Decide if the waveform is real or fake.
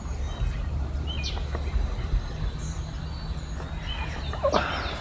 real